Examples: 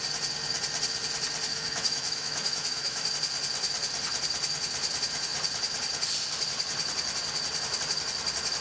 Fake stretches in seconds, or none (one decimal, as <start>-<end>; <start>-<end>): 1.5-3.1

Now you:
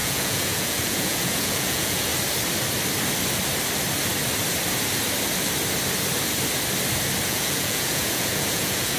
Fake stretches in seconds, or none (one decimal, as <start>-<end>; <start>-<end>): 0.0-2.1; 7.2-9.0

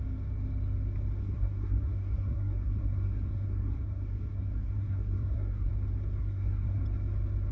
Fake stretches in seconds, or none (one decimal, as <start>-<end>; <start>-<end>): 1.2-5.7; 6.2-6.8

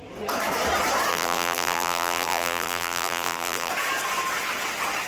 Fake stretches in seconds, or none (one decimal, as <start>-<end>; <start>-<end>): 1.1-3.7

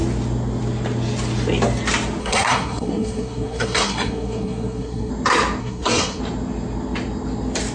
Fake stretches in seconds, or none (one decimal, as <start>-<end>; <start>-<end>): 2.2-5.1; 5.6-6.2

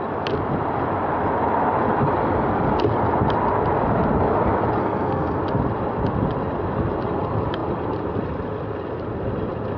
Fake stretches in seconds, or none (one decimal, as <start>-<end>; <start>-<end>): 4.8-5.4

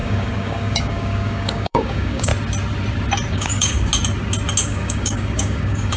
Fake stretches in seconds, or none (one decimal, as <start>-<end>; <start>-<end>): 0.0-2.3; 3.3-3.9; 4.6-6.0